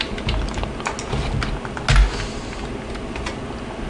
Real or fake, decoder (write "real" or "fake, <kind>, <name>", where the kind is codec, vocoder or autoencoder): real